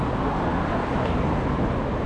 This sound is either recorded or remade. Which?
recorded